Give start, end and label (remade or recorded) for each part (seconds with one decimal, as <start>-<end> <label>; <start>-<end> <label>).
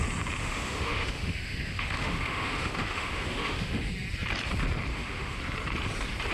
0.0-0.4 recorded; 0.4-3.9 remade; 3.9-4.9 recorded; 4.9-5.4 remade; 5.4-6.3 recorded